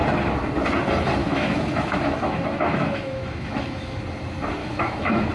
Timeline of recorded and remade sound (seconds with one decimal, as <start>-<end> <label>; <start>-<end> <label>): 0.0-1.2 recorded; 1.2-4.0 remade; 4.0-4.6 recorded; 4.6-5.3 remade